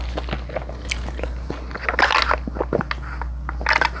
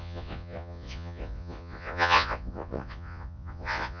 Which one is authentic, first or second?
first